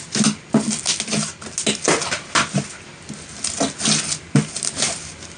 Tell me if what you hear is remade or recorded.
recorded